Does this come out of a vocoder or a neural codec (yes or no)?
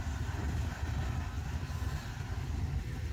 no